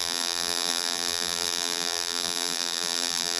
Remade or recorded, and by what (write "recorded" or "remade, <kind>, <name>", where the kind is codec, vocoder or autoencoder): remade, vocoder, BigVGAN v2